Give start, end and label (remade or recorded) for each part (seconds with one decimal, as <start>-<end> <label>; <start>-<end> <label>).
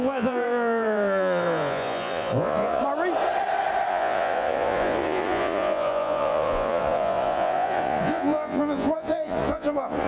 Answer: 0.0-2.8 remade; 2.8-3.9 recorded; 3.9-10.1 remade